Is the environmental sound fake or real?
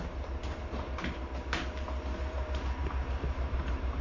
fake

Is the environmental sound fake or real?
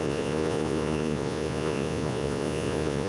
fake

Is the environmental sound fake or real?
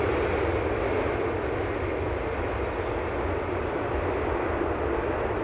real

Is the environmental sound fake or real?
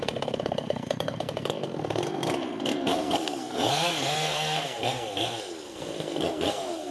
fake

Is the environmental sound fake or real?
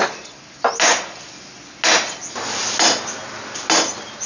real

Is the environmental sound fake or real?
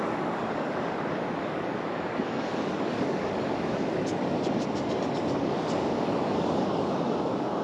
fake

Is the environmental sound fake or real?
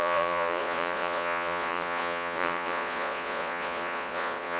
fake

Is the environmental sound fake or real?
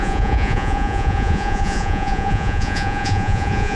fake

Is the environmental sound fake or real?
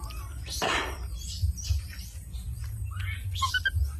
real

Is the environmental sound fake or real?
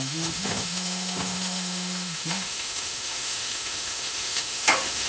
fake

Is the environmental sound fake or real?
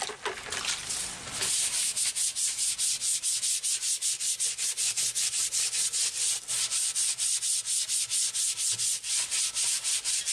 real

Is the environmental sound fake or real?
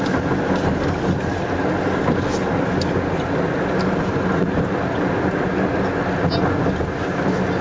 real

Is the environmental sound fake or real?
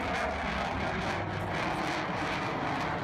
real